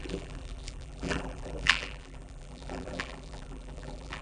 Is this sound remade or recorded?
remade